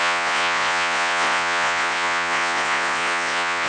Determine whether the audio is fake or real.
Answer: fake